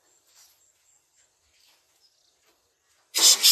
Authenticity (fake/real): real